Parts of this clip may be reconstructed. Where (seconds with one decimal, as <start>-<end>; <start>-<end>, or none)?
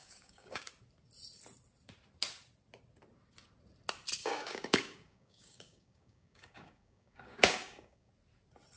0.0-0.7; 4.2-8.1